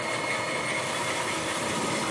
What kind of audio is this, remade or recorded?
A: remade